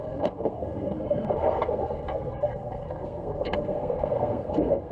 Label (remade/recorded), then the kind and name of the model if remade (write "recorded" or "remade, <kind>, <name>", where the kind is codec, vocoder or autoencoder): remade, codec, SNAC